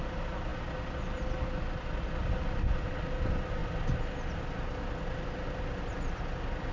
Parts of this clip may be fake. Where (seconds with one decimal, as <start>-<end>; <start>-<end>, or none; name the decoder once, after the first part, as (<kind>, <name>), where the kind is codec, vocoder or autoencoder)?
none